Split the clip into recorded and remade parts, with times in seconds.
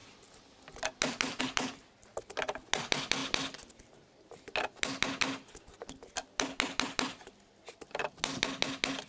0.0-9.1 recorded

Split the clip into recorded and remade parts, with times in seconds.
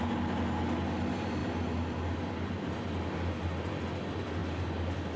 0.0-5.2 recorded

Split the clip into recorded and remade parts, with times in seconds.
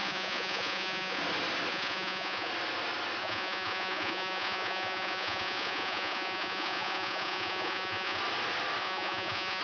0.0-1.2 remade; 1.2-1.7 recorded; 1.7-2.5 remade; 2.5-3.2 recorded; 3.2-8.2 remade; 8.2-8.8 recorded; 8.8-9.6 remade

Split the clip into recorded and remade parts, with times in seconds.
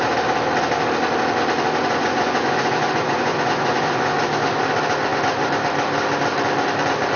0.0-1.8 recorded; 1.8-4.2 remade; 4.2-7.2 recorded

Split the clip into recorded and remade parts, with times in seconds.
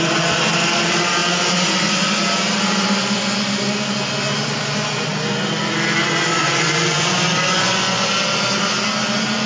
0.0-6.4 recorded; 6.4-8.1 remade; 8.1-9.5 recorded